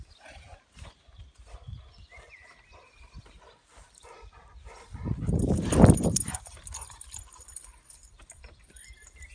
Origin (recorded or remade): remade